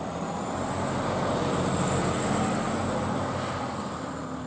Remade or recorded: recorded